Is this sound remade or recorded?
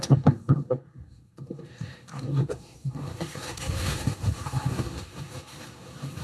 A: remade